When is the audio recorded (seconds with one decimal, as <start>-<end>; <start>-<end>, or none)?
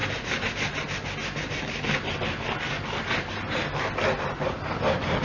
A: 0.0-5.2